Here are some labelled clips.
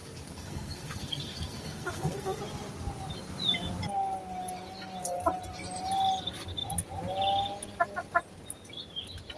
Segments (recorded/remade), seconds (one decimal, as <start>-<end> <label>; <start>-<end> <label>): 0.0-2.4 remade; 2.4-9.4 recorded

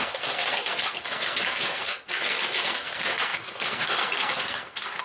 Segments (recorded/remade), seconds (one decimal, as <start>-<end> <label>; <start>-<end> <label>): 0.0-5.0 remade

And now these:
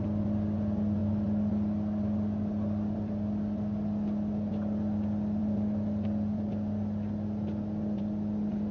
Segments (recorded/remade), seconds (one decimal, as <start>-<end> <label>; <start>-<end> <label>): 0.0-8.7 recorded

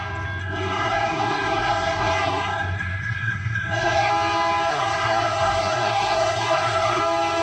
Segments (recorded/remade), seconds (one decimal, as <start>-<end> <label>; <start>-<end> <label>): 0.0-0.4 recorded; 0.4-4.1 remade; 4.1-4.7 recorded; 4.7-7.0 remade; 7.0-7.4 recorded

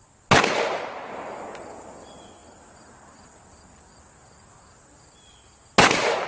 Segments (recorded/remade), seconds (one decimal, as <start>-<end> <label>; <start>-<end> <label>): 0.0-6.3 recorded

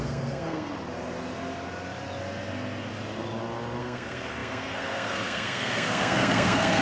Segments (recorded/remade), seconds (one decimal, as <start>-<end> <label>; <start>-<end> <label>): 0.0-0.7 remade; 0.7-3.8 recorded; 3.8-6.8 remade